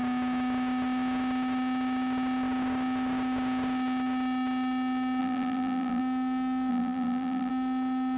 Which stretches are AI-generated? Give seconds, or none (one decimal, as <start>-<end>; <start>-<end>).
5.2-6.0; 6.7-7.5